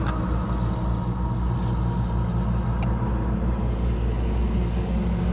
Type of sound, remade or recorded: recorded